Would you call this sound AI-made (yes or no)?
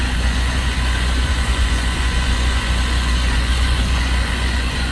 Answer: yes